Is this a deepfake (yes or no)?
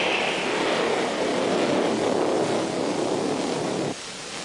no